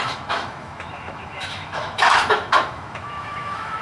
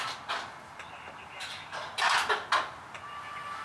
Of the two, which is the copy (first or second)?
first